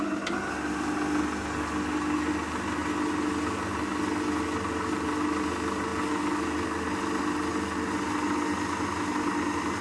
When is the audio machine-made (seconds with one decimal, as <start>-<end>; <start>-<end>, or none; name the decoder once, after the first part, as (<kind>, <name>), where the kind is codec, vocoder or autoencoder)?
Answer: none